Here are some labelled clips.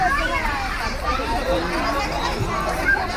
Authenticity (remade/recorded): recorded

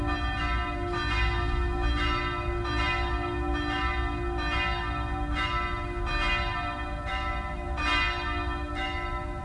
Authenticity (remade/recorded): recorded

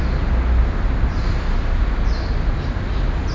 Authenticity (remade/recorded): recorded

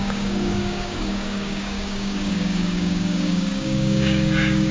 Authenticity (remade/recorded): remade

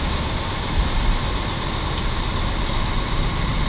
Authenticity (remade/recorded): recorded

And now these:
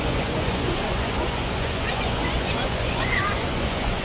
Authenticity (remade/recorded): remade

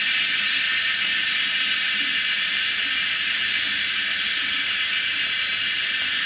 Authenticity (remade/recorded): recorded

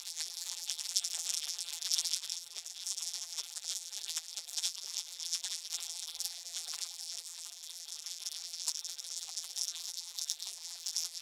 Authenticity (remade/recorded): remade